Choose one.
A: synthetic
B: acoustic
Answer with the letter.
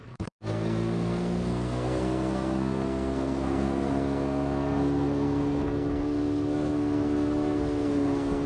A